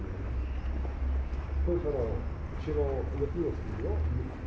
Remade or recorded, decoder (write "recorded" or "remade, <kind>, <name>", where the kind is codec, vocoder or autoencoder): recorded